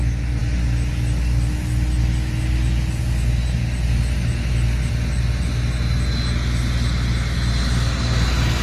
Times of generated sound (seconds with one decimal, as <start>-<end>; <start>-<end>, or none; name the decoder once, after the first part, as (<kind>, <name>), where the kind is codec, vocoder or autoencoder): none